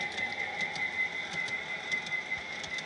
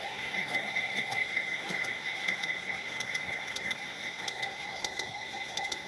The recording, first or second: first